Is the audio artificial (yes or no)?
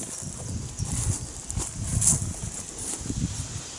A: no